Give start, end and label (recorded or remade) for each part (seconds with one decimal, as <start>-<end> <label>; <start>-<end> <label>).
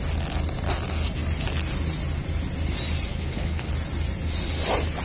0.0-3.1 recorded; 3.1-3.7 remade; 3.7-5.0 recorded